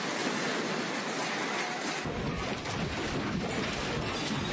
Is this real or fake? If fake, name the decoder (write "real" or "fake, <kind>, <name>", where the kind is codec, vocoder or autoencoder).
real